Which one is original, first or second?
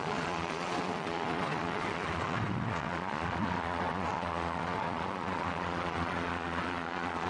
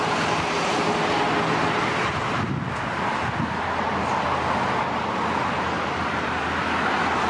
second